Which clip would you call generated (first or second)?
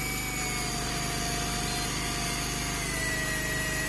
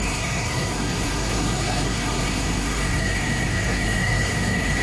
second